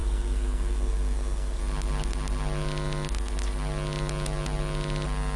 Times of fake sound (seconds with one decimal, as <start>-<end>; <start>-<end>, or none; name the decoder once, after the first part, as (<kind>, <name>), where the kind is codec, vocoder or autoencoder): 0.0-1.6 (codec, SNAC)